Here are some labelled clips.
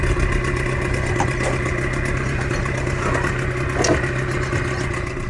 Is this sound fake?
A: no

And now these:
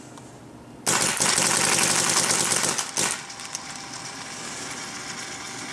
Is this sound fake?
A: no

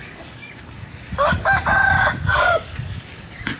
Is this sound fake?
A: yes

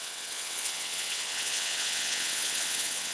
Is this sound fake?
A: yes